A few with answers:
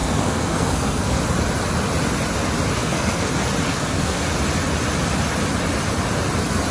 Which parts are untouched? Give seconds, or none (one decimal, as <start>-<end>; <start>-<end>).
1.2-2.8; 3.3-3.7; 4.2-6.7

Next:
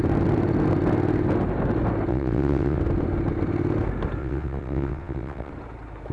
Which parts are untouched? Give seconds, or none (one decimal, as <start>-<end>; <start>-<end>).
0.0-2.1; 2.8-4.2; 5.5-6.1

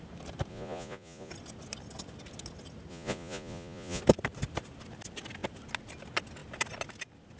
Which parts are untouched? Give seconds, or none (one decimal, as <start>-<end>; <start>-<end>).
0.0-0.5; 1.3-2.9; 4.0-7.4

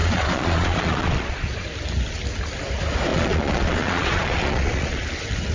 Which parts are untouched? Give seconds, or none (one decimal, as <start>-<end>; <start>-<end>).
1.6-3.1; 5.1-5.5

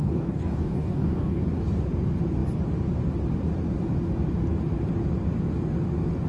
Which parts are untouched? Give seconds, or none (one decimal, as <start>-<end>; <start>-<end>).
1.4-6.3